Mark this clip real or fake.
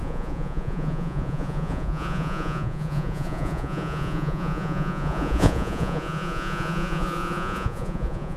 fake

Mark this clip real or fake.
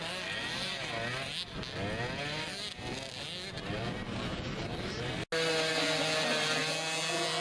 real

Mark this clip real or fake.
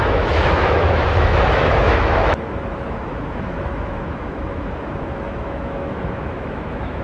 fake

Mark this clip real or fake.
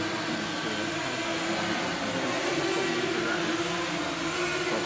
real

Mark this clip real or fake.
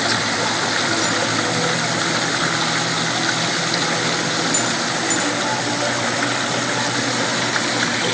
real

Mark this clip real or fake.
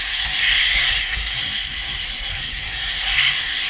fake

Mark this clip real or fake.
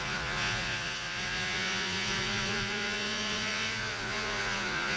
fake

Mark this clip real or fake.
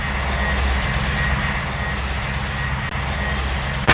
real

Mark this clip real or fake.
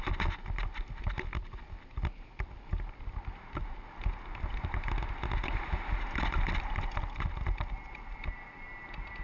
real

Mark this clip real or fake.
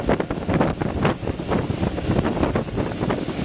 real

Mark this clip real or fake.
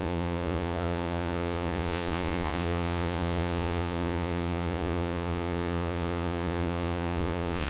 fake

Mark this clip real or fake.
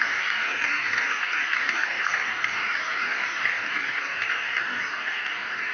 fake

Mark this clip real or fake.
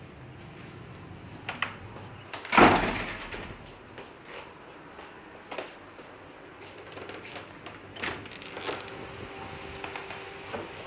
real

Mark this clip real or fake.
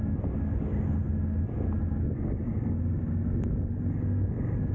real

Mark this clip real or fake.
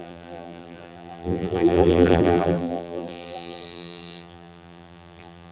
fake